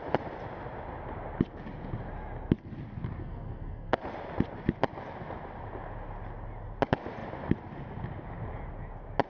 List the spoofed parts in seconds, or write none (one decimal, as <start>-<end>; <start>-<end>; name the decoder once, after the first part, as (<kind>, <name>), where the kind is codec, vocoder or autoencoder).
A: 3.2-4.0 (codec, SNAC)